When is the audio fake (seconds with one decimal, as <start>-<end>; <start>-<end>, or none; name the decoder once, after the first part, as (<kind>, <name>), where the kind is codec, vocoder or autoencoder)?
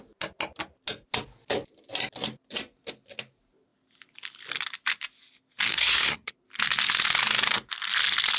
5.7-6.3 (codec, SNAC)